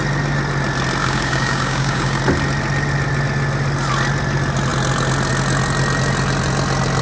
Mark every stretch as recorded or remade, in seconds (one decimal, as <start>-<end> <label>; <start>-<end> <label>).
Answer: 0.0-1.0 recorded; 1.0-2.2 remade; 2.2-7.0 recorded